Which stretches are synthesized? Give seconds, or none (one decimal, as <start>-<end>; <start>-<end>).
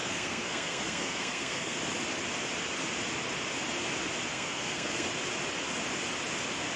0.0-1.8; 4.3-5.1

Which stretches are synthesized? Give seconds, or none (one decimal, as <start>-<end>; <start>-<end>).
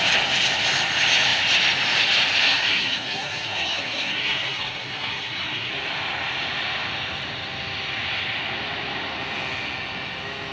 2.4-5.7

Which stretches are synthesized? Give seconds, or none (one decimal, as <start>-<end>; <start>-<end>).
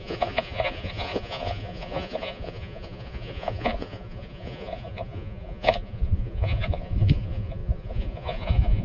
0.0-8.8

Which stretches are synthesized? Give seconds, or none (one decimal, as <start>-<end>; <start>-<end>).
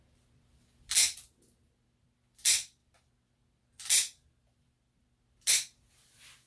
none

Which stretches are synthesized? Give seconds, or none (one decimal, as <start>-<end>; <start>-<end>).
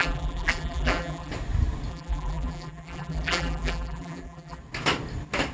0.0-1.3; 1.9-4.6